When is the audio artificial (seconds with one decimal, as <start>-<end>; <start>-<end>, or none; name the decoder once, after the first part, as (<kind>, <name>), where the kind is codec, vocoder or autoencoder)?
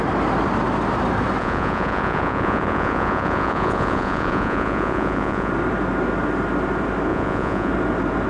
1.4-5.5 (vocoder, Vocos); 7.1-7.7